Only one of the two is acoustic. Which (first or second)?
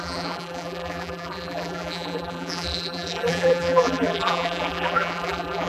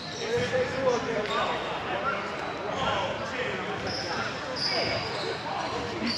second